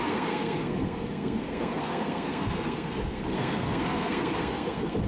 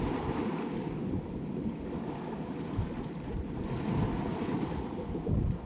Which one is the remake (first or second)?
first